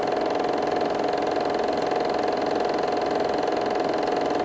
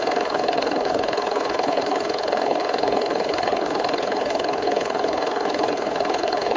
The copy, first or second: second